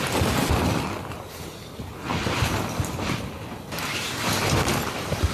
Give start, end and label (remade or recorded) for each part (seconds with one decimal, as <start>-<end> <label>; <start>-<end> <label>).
0.0-2.1 recorded; 2.1-5.3 remade